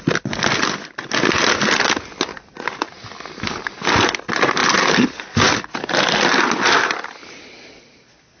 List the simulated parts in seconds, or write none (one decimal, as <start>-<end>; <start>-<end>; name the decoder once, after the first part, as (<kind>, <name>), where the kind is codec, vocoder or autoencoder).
4.6-7.0 (vocoder, BigVGAN v2)